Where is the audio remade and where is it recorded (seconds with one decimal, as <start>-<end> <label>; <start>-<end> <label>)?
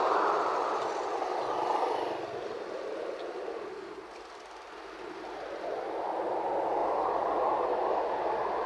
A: 0.0-6.8 recorded; 6.8-7.6 remade; 7.6-8.7 recorded